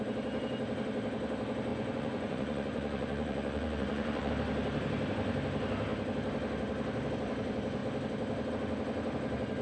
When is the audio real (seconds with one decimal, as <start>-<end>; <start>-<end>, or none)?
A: 0.0-1.7; 4.3-9.6